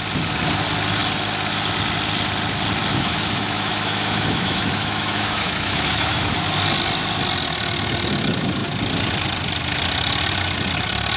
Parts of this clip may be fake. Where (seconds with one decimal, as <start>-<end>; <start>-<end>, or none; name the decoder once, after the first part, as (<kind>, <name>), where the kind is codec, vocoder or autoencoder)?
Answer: 2.9-6.3 (autoencoder, DAC-VAE)